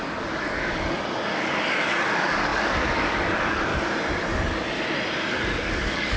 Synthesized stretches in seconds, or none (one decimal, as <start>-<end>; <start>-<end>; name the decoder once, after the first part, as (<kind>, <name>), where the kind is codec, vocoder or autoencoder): 0.0-3.7 (codec, DAC); 5.3-6.2